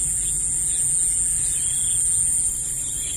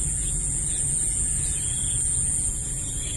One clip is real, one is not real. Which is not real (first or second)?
second